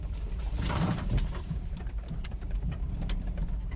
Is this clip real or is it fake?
fake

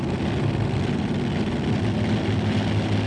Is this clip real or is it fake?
real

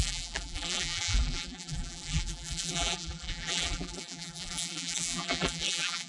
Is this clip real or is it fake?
fake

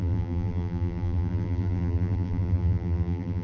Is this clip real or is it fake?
fake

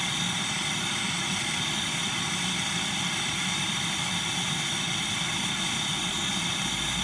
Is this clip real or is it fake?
fake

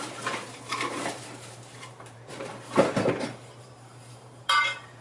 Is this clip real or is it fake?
fake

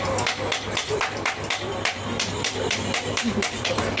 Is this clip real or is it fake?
fake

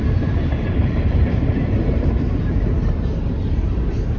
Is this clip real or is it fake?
fake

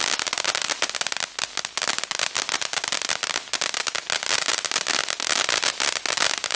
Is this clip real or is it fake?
real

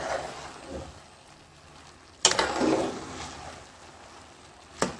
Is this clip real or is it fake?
real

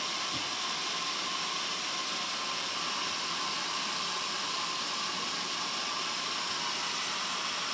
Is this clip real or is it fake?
fake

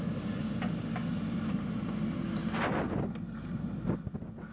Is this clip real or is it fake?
real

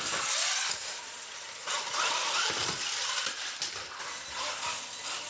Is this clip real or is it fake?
fake